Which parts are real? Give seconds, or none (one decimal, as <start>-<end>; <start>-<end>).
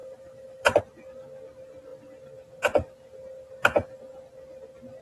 0.8-5.0